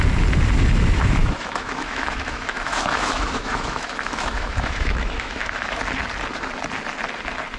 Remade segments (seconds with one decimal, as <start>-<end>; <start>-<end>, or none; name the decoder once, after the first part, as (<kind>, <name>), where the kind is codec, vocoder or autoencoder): 1.2-5.8 (autoencoder, DAC-VAE)